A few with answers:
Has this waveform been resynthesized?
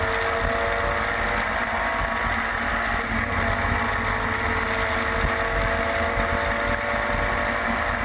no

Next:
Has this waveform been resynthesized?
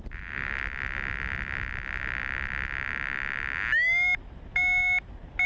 no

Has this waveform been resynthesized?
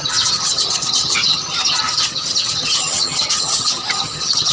yes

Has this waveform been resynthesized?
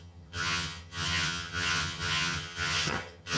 yes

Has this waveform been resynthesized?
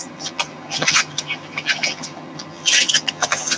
yes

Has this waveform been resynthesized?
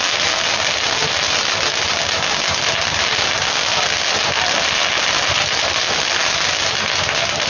no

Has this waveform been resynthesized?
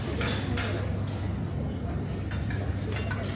no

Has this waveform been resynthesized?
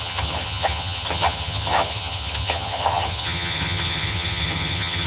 yes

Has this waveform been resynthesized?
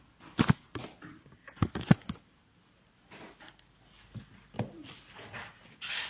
no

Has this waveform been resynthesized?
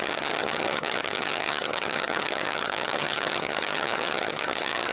yes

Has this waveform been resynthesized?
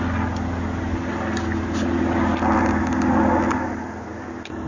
no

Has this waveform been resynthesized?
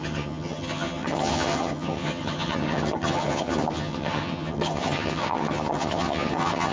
yes